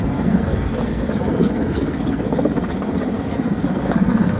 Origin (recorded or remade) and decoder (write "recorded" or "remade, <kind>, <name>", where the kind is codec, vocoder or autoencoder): remade, codec, SNAC